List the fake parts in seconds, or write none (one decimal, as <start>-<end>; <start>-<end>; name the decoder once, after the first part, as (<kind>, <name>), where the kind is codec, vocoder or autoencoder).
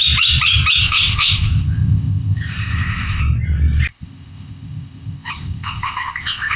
0.8-3.2 (codec, ZipCodec); 3.9-6.6